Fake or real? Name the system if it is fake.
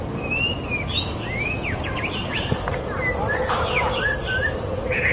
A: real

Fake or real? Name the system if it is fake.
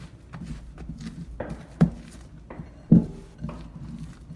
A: real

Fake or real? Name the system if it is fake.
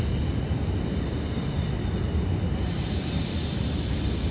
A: real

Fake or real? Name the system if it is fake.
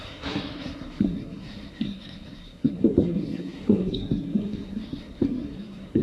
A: fake, codec, SNAC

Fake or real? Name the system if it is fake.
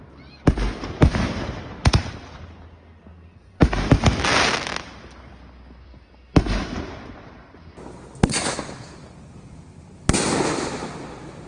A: real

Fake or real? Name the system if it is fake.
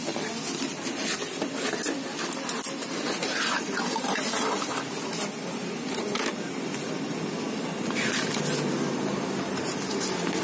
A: real